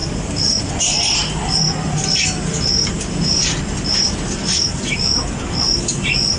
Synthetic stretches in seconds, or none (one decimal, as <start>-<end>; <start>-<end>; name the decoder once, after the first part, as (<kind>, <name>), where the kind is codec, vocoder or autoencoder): none